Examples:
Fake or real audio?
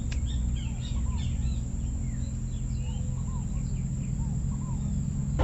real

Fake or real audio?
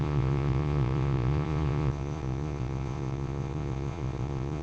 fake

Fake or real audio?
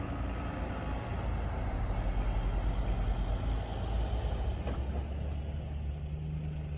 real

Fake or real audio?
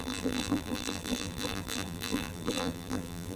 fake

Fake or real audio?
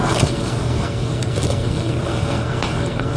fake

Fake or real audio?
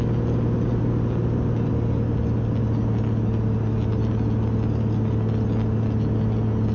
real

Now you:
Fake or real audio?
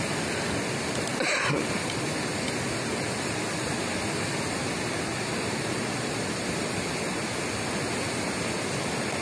real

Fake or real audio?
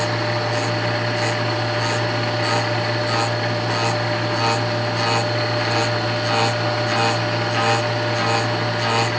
real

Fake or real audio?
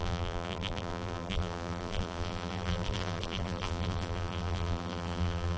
fake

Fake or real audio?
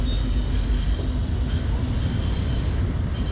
real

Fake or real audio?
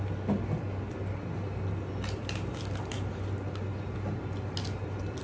real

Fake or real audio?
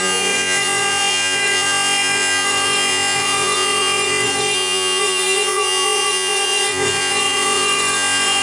fake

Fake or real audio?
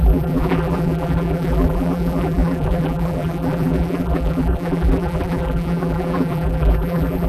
fake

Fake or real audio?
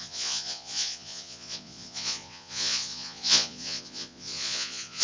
fake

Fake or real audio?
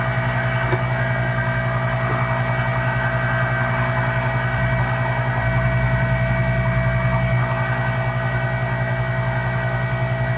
real